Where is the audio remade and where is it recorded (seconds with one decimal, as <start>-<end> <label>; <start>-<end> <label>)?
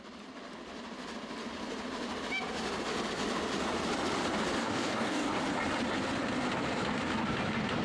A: 0.0-4.6 recorded; 4.6-5.4 remade; 5.4-7.8 recorded